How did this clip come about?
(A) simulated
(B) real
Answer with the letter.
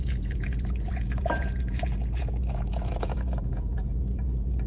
A